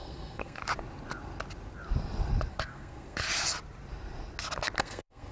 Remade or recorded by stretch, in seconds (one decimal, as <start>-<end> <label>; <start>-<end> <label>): 0.0-0.6 remade; 0.6-2.5 recorded; 2.5-3.2 remade; 3.2-4.8 recorded; 4.8-5.3 remade